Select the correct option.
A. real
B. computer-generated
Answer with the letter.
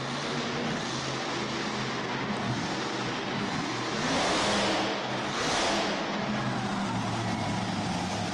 A